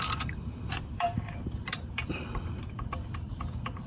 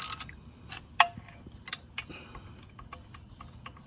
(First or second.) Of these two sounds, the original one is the second